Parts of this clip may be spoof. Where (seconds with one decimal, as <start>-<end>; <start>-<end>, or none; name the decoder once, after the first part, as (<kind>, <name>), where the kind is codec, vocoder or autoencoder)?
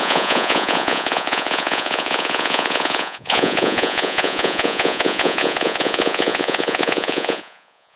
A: 0.0-8.0 (vocoder, Vocos)